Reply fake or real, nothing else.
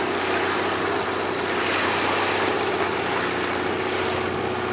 real